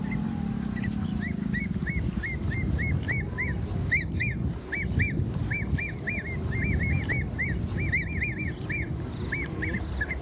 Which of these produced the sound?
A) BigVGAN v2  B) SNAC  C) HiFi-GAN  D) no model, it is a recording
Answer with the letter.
D